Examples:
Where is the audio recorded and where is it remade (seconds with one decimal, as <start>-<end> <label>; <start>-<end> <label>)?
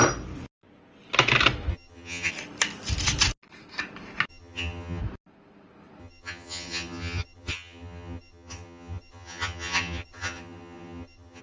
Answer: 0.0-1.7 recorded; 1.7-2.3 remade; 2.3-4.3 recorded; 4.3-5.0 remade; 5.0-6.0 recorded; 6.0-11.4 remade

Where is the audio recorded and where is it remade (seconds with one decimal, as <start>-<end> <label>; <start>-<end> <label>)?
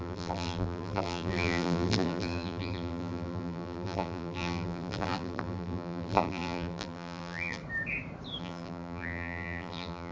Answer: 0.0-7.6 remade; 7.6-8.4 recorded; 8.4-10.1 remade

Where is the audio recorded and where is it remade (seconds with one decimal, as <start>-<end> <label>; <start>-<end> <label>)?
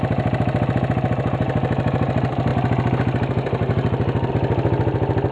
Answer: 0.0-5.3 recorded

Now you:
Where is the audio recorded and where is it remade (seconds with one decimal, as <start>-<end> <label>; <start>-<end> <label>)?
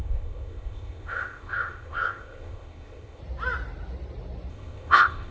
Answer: 0.0-3.2 remade; 3.2-4.5 recorded; 4.5-5.3 remade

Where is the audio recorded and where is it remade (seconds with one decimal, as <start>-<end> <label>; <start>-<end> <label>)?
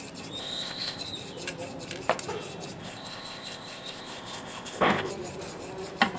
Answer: 0.0-0.4 recorded; 0.4-1.0 remade; 1.0-2.8 recorded; 2.8-5.1 remade; 5.1-6.2 recorded